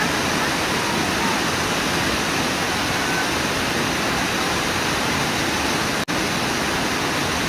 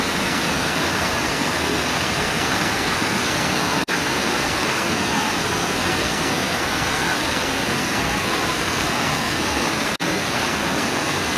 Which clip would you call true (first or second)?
first